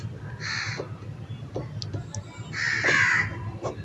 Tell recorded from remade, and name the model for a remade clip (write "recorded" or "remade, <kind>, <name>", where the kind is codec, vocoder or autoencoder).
recorded